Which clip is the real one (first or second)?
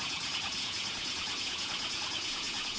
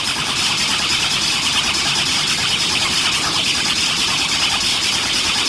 second